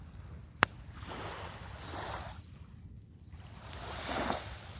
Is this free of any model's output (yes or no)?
yes